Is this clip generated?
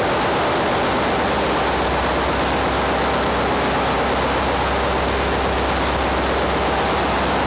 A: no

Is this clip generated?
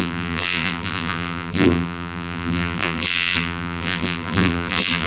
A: yes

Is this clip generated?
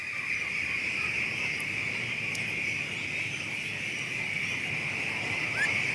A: no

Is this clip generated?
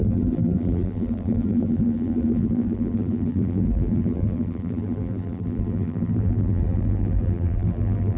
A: yes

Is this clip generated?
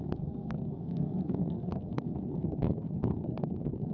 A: yes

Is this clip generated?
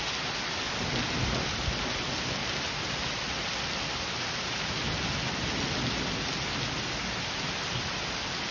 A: no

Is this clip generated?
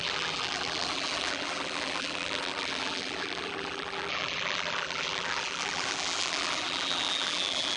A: yes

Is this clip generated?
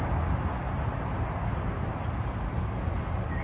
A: no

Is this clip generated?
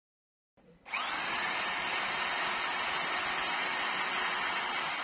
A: no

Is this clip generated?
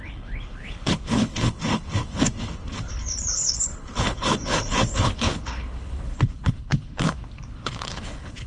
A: yes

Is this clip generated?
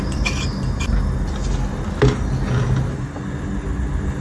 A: no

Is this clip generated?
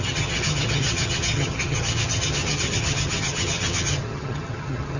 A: yes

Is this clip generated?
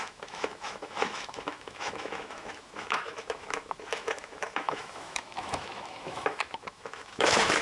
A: yes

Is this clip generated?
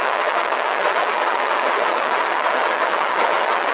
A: yes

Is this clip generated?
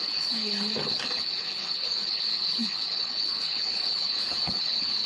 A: yes